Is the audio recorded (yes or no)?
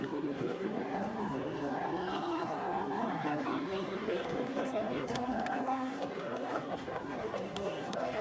no